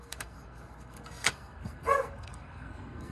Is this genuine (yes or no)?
no